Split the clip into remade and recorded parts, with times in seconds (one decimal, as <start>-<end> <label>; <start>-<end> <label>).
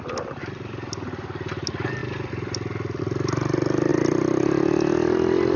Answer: 0.0-2.0 recorded; 2.0-3.0 remade; 3.0-5.6 recorded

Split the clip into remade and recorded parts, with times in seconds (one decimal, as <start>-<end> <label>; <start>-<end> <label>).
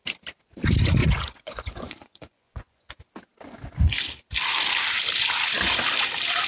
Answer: 0.0-1.0 recorded; 1.0-2.9 remade; 2.9-6.5 recorded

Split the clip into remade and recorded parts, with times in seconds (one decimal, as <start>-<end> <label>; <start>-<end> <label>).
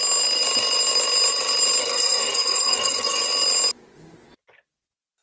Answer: 0.0-1.8 recorded; 1.8-3.2 remade; 3.2-5.2 recorded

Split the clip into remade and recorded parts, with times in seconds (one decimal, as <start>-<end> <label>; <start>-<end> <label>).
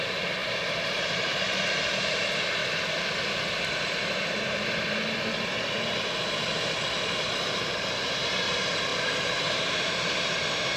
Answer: 0.0-2.6 remade; 2.6-3.6 recorded; 3.6-10.8 remade